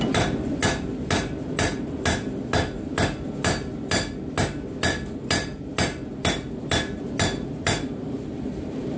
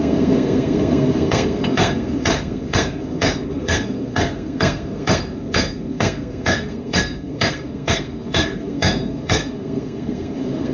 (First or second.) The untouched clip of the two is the first